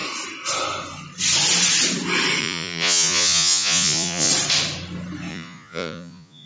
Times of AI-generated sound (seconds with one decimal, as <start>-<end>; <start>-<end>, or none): 2.4-4.3; 5.3-6.5